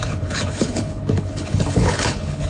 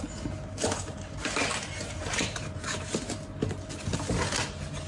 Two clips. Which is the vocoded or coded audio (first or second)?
first